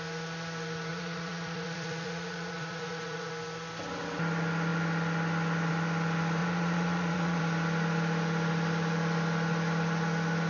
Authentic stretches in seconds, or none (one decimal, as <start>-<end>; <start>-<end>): 0.0-0.9; 3.3-6.4; 7.4-10.5